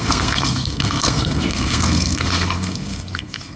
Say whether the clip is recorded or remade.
remade